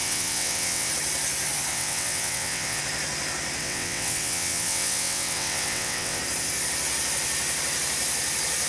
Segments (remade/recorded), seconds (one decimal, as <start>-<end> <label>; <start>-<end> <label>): 0.0-0.9 remade; 0.9-1.7 recorded; 1.7-2.8 remade; 2.8-3.6 recorded; 3.6-6.2 remade; 6.2-8.7 recorded